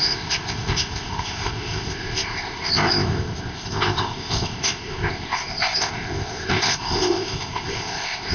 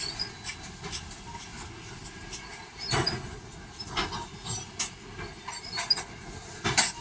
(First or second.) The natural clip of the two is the second